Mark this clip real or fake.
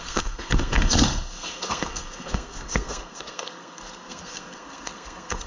fake